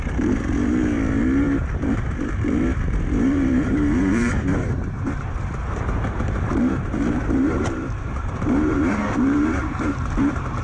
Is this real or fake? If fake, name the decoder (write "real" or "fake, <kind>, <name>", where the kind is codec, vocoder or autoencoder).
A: fake, vocoder, BigVGAN v2